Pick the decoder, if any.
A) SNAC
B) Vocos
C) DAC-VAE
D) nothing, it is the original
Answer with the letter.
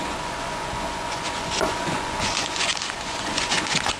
B